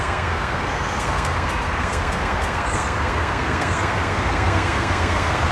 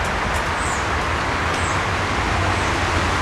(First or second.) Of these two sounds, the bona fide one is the second